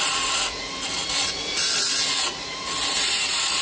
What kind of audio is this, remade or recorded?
remade